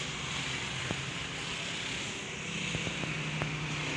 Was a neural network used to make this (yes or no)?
no